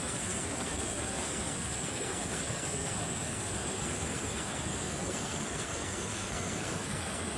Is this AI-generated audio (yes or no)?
yes